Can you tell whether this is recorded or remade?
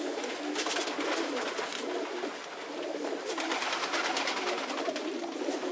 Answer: recorded